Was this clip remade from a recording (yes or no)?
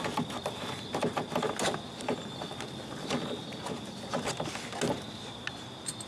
no